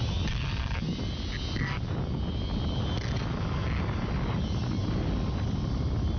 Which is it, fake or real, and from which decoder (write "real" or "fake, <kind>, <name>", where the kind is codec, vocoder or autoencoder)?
real